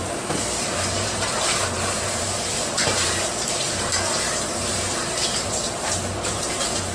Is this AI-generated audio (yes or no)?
yes